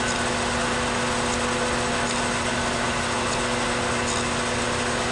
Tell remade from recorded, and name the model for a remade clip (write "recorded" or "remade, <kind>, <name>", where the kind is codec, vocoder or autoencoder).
recorded